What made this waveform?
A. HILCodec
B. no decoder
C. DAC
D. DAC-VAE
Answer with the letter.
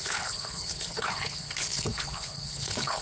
A